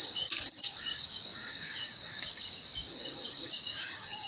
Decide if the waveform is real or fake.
fake